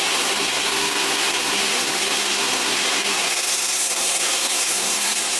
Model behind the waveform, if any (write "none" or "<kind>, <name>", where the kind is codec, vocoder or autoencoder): codec, SNAC